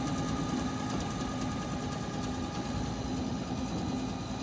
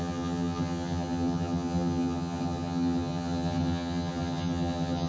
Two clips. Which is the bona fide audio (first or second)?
first